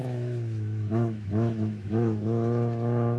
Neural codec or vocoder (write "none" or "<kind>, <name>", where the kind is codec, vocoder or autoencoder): autoencoder, DAC-VAE